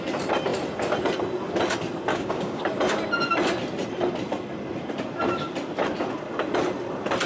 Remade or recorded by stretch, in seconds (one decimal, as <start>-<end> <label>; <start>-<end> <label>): 0.0-2.1 recorded; 2.1-2.6 remade; 2.6-7.3 recorded